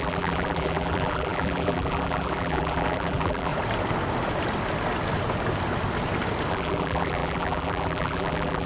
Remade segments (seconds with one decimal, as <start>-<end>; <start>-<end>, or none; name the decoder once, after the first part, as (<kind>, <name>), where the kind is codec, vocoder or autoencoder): 0.0-3.5 (vocoder, BigVGAN v2); 6.5-8.7